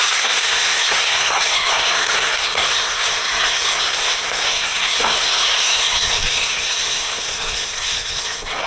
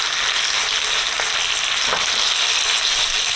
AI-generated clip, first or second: first